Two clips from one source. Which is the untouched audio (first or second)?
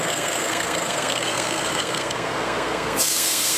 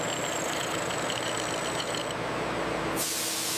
second